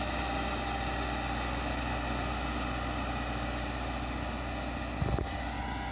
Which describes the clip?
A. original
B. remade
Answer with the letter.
A